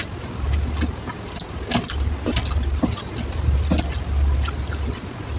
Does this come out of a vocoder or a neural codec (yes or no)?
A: no